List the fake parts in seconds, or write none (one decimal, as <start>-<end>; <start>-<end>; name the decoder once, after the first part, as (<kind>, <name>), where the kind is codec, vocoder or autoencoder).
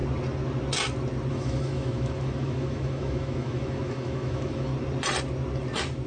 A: 1.3-4.7 (autoencoder, DAC-VAE)